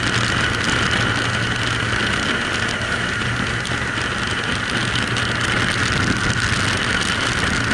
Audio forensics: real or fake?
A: real